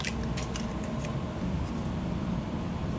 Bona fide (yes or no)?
no